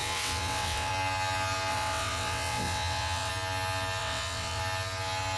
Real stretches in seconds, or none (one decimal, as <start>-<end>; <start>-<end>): 0.9-1.7; 3.3-4.0; 4.6-5.4